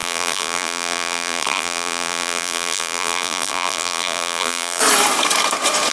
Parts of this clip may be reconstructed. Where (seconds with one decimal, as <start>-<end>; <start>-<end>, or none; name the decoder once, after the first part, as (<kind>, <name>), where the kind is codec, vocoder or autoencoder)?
0.0-4.8 (vocoder, BigVGAN v2)